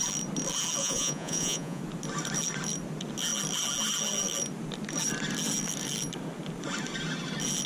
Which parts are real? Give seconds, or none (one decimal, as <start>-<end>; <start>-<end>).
0.0-0.8; 1.8-7.7